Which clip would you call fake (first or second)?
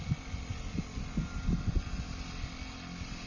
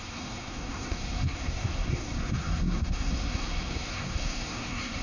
second